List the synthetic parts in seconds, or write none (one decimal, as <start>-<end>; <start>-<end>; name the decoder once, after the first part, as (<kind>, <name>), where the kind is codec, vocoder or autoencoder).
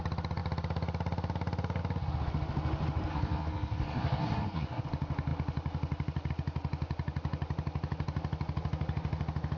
3.1-4.8 (codec, SNAC)